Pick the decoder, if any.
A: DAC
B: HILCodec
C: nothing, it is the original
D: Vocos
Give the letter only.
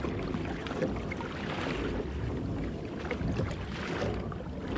C